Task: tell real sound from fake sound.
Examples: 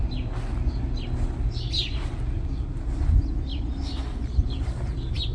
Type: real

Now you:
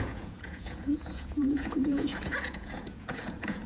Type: fake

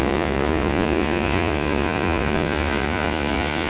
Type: fake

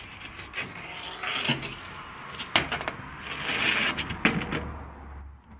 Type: real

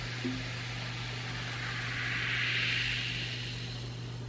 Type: real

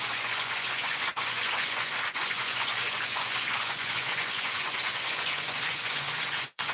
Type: fake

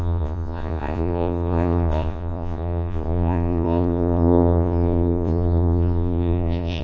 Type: fake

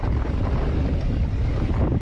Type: real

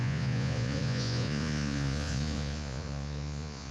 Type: fake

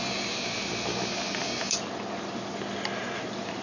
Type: real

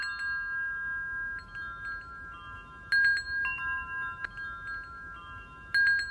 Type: real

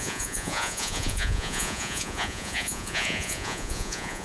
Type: fake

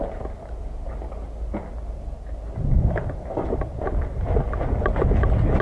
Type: real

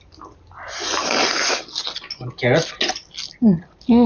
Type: real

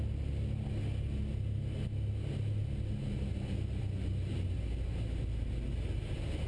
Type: real